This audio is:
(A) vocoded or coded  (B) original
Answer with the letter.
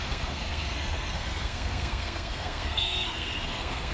A